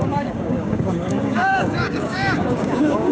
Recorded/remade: remade